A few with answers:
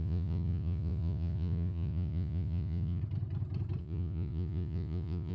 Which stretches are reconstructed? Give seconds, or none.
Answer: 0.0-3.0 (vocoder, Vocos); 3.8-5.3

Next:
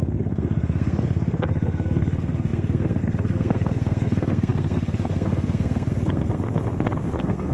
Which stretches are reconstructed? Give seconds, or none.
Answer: 0.0-7.5 (codec, SNAC)